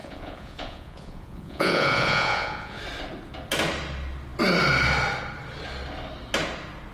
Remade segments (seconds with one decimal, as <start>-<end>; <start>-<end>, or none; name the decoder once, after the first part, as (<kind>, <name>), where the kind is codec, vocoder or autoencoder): 0.0-2.8 (vocoder, Vocos)